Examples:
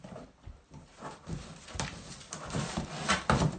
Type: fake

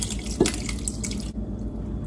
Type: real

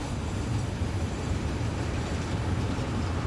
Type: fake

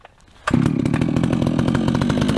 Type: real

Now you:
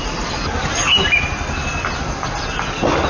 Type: real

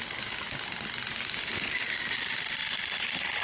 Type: real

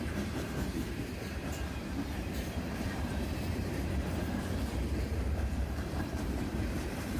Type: fake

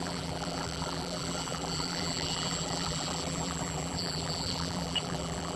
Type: fake